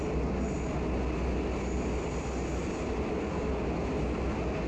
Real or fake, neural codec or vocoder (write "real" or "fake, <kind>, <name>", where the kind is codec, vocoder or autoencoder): real